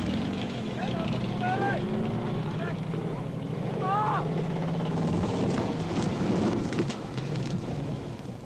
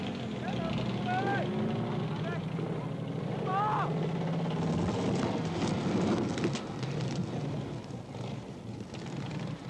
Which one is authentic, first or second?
second